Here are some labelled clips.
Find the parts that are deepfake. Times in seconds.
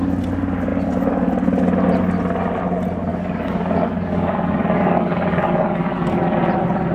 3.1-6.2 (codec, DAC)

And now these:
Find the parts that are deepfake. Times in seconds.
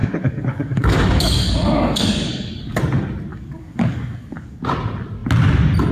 0.0-2.8 (codec, DAC); 3.3-4.6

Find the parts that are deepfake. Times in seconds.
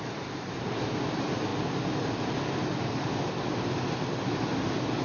none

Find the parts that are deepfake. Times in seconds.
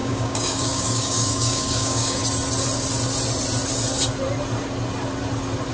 0.0-2.2 (codec, DAC)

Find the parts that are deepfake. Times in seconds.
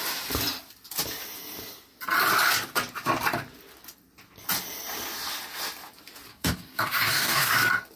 6.3-7.5 (codec, DAC)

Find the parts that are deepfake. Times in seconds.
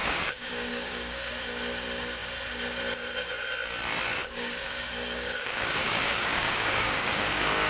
0.0-1.3 (codec, DAC); 4.2-7.7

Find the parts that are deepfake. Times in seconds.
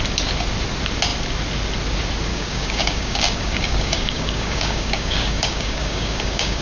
2.3-6.6 (codec, DAC)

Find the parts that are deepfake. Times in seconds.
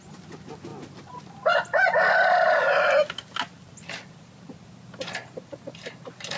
none